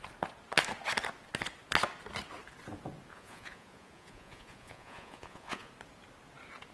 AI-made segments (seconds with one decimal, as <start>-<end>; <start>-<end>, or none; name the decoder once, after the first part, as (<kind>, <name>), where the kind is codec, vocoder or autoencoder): 3.1-5.7 (vocoder, Vocos)